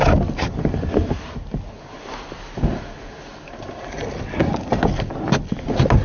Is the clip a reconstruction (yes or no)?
no